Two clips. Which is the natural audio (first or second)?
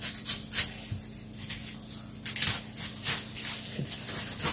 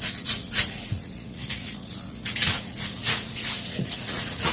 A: first